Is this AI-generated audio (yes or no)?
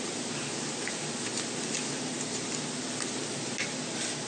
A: no